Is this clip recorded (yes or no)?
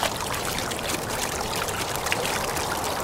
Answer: no